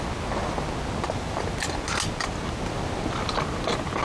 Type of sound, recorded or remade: recorded